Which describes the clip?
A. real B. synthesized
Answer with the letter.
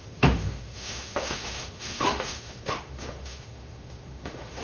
B